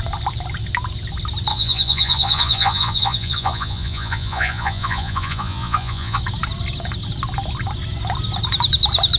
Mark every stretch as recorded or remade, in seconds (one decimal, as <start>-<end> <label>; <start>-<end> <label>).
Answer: 0.0-1.5 recorded; 1.5-6.2 remade; 6.2-9.2 recorded